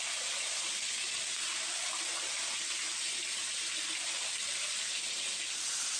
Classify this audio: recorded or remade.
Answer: recorded